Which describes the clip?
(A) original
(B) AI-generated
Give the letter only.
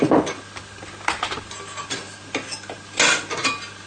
A